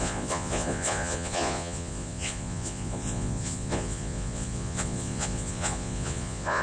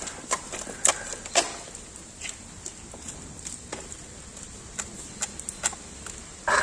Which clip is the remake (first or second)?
first